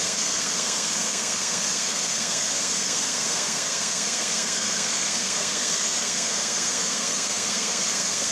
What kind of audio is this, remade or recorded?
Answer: remade